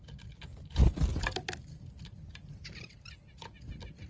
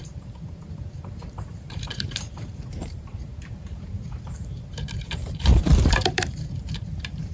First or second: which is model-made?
second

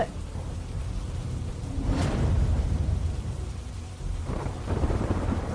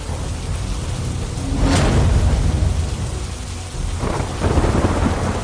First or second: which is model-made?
first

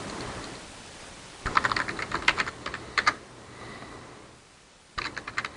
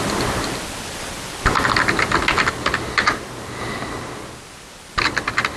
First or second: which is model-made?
first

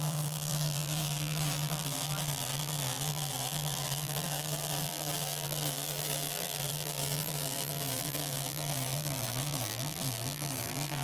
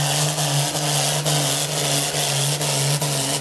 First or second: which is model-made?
first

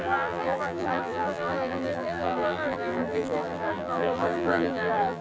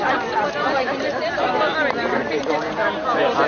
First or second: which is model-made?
first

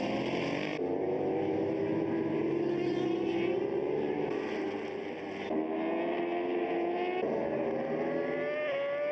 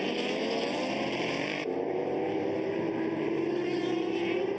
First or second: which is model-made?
second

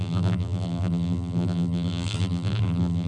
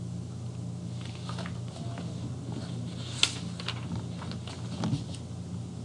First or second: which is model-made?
first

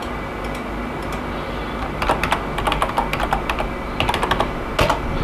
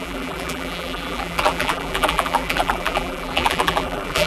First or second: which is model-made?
second